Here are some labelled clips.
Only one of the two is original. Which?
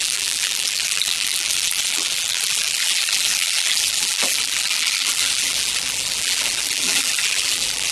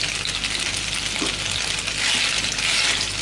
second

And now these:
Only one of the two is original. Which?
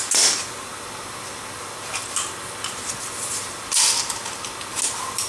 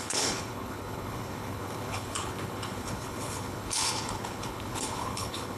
first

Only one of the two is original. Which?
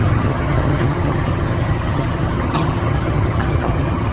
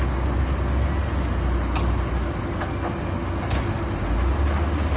second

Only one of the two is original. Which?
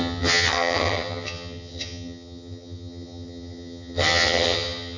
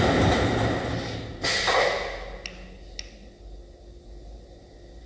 second